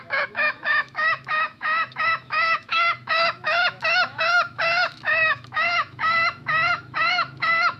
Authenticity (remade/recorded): remade